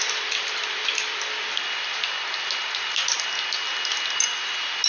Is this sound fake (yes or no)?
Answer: no